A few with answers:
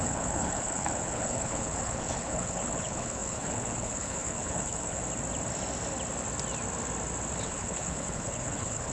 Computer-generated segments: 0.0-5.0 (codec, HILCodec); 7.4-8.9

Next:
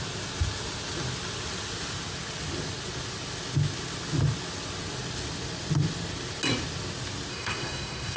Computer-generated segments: 7.3-8.2 (codec, SNAC)

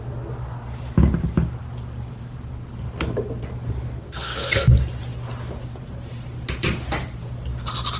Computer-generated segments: 4.0-4.7 (codec, SNAC)

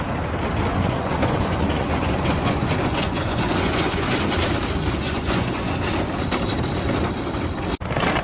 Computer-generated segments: 0.7-4.1 (vocoder, Vocos); 5.0-5.7

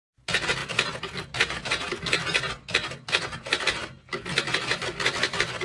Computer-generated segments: 0.6-1.9 (vocoder, BigVGAN v2)

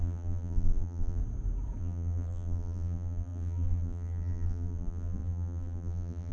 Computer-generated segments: 0.0-1.2 (vocoder, BigVGAN v2); 1.8-6.3

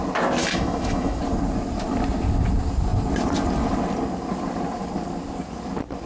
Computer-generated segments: 0.4-1.2 (autoencoder, DAC-VAE)